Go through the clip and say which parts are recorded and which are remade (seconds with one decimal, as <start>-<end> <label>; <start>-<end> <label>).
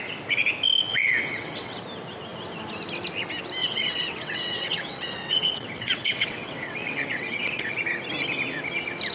0.0-0.9 recorded; 0.9-1.8 remade; 1.8-3.6 recorded; 3.6-7.7 remade; 7.7-9.1 recorded